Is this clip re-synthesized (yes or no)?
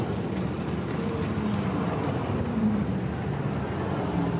no